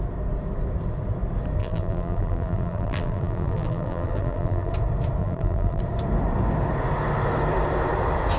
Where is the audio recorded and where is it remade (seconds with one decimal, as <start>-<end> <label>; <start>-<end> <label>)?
0.0-1.6 recorded; 1.6-4.7 remade; 4.7-5.2 recorded; 5.2-5.8 remade; 5.8-8.4 recorded